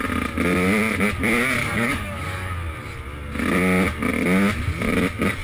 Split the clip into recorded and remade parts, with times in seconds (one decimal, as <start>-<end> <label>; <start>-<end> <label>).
0.0-1.6 recorded; 1.6-2.5 remade; 2.5-5.4 recorded